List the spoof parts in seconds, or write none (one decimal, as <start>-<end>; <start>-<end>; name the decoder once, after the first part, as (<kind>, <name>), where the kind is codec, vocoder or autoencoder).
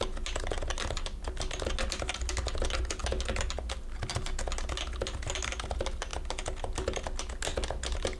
none